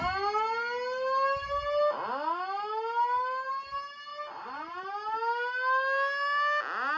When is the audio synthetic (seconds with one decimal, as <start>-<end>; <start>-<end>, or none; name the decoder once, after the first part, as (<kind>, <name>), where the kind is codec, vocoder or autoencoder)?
none